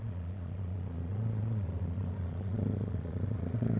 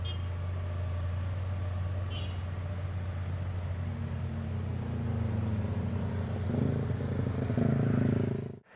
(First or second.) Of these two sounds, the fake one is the first